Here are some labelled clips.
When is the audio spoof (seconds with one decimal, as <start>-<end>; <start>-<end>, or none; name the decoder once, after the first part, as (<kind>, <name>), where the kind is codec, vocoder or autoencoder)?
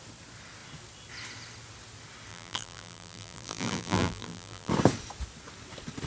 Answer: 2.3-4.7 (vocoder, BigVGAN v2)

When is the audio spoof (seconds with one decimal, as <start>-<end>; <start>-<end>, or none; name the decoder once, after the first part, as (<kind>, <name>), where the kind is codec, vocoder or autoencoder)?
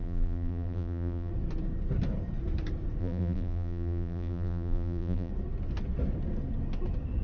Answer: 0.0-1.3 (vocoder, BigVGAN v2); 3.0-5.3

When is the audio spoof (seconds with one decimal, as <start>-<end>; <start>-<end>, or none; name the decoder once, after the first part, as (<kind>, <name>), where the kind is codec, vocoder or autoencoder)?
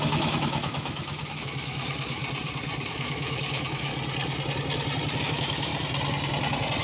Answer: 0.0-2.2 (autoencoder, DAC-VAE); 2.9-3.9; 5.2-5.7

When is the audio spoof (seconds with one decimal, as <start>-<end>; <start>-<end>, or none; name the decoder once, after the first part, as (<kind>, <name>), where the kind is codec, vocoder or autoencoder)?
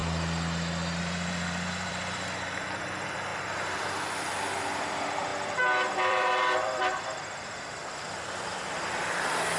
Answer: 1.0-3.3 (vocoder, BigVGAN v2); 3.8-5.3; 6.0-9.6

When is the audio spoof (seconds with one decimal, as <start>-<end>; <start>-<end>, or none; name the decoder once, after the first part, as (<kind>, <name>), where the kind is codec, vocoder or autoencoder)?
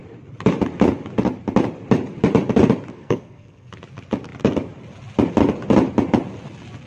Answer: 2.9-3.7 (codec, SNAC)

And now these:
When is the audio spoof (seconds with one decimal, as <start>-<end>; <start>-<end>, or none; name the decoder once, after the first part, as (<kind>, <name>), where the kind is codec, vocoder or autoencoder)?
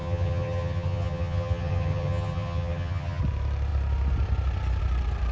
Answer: 0.0-3.2 (vocoder, HiFi-GAN)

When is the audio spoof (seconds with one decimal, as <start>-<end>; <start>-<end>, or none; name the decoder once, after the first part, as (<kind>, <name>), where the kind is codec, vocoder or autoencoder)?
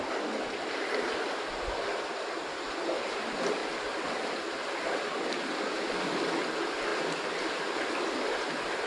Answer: none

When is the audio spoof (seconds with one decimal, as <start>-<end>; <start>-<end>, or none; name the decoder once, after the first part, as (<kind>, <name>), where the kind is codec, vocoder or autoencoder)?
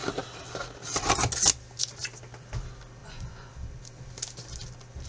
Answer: 3.0-3.5 (vocoder, Vocos)